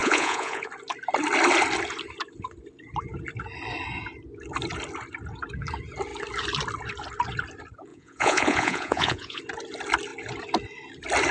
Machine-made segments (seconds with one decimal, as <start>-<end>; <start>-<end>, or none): 0.0-0.7; 7.9-9.4